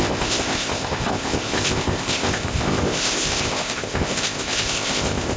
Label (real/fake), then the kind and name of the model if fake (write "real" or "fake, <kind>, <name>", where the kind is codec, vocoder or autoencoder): fake, codec, ZipCodec